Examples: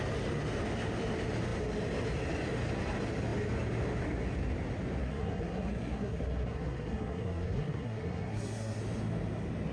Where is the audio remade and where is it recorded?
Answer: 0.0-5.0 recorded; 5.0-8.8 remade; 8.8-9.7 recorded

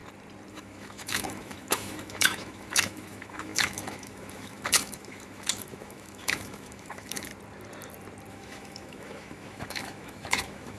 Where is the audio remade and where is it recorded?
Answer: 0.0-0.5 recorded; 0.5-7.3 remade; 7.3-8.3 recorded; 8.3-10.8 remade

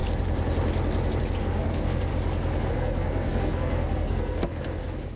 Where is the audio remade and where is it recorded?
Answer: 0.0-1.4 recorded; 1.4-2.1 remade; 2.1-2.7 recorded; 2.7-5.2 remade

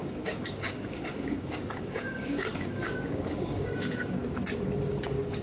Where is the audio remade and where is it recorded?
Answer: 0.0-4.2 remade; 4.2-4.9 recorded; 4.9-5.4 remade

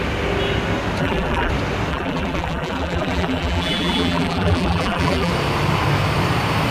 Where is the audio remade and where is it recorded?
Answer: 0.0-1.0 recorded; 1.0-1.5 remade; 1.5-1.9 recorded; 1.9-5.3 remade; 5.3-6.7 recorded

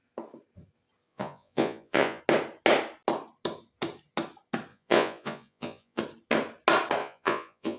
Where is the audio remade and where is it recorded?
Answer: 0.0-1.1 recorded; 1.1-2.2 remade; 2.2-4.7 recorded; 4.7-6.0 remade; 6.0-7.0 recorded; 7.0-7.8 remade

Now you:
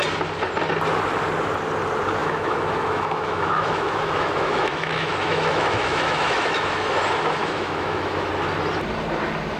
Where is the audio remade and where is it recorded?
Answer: 0.0-2.2 recorded; 2.2-6.9 remade; 6.9-7.4 recorded; 7.4-8.3 remade; 8.3-9.6 recorded

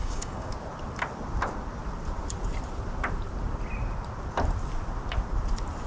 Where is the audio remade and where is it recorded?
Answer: 0.0-0.5 remade; 0.5-5.9 recorded